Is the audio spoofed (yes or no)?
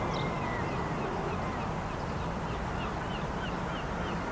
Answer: no